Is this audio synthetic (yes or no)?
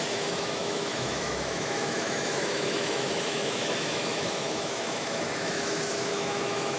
yes